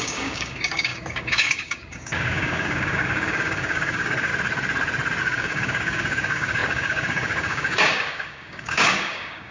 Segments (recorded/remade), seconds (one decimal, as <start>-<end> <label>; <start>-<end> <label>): 0.0-4.3 remade; 4.3-5.2 recorded; 5.2-9.5 remade